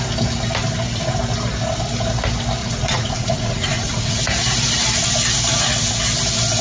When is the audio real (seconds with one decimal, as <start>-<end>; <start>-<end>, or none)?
0.0-2.6; 4.2-6.6